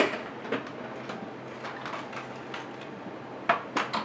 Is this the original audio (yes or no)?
yes